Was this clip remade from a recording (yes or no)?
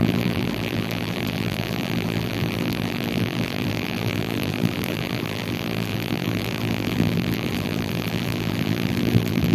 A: yes